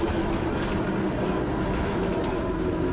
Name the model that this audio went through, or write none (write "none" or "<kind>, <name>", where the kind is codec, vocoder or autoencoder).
none